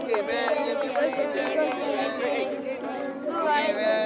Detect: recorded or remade recorded